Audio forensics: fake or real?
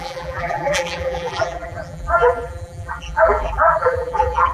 fake